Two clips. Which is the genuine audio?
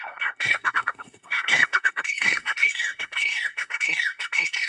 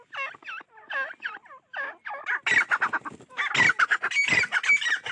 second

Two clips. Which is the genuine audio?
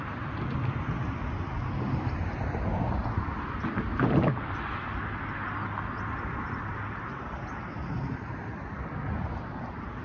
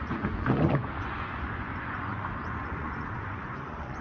first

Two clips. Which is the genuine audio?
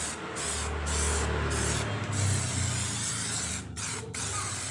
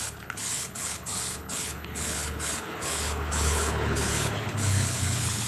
first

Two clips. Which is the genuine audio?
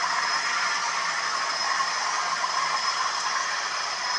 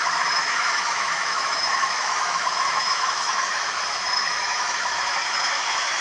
first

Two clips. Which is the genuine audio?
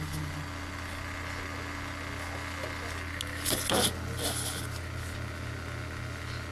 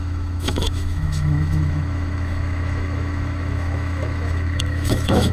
first